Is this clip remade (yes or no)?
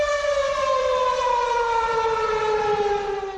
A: yes